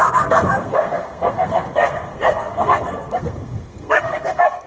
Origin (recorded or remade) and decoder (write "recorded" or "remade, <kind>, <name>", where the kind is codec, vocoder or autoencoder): remade, codec, SNAC